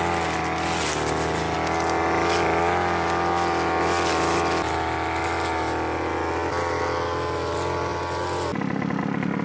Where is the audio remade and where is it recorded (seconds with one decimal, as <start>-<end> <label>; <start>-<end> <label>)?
0.0-9.4 recorded